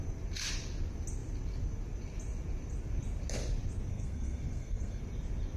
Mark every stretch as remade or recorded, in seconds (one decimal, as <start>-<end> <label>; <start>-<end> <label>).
0.0-3.9 recorded; 3.9-5.0 remade; 5.0-5.6 recorded